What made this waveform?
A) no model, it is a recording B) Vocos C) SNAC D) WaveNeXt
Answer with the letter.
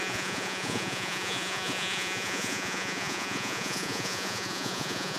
B